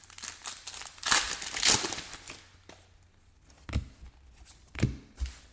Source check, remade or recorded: recorded